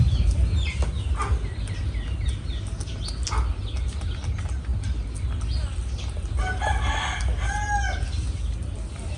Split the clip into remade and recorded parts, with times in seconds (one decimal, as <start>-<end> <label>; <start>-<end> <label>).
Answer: 0.0-9.2 recorded